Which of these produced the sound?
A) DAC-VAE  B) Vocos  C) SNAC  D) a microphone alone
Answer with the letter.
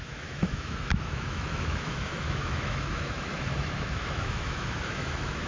A